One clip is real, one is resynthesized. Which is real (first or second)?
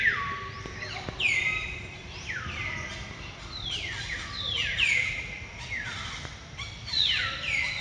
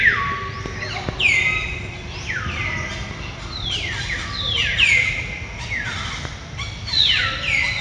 second